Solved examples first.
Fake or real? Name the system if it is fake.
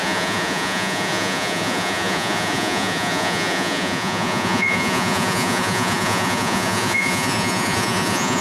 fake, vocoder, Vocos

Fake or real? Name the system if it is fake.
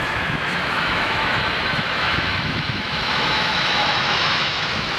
fake, autoencoder, DAC-VAE